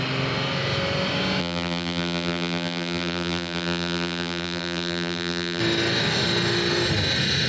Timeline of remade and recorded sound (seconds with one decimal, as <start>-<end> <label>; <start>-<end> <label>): 0.0-1.4 recorded; 1.4-5.6 remade; 5.6-7.5 recorded